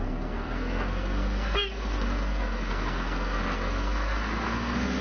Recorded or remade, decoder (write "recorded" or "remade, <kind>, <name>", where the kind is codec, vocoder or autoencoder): remade, codec, SNAC